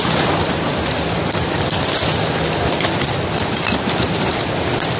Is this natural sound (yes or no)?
yes